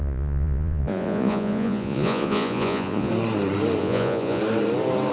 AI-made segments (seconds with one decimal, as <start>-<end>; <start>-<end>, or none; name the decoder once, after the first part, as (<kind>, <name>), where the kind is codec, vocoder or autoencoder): 0.0-3.1 (vocoder, Vocos); 3.8-4.4